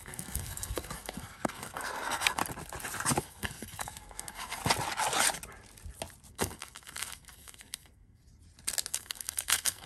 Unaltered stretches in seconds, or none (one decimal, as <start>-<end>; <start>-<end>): 2.4-3.2; 4.6-6.3; 8.2-8.9